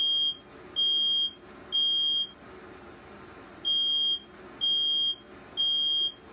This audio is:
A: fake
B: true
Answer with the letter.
B